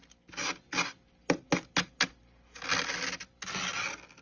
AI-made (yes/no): no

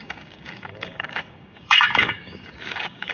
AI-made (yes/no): yes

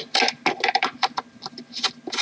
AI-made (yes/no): no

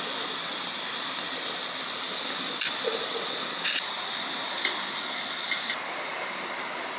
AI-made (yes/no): no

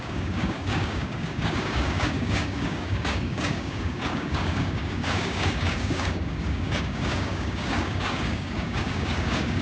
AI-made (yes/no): yes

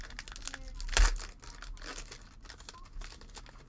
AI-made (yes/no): no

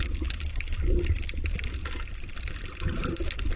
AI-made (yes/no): no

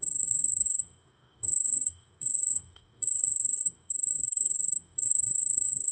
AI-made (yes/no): yes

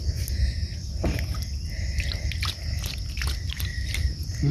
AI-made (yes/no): no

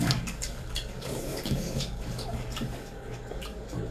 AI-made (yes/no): yes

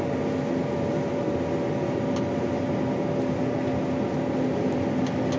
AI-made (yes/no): no